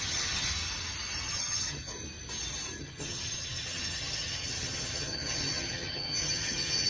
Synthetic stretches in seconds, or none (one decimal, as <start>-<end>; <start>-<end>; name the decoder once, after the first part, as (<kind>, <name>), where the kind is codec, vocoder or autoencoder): 0.0-0.5 (vocoder, HiFi-GAN); 1.3-1.9; 2.8-6.9